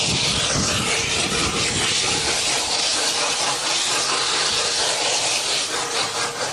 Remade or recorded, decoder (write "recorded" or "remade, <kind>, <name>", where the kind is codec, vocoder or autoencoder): recorded